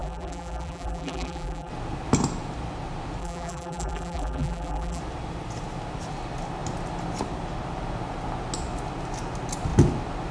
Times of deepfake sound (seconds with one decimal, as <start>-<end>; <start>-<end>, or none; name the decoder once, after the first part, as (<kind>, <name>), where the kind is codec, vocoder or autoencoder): 0.0-1.7 (vocoder, BigVGAN v2); 3.2-5.0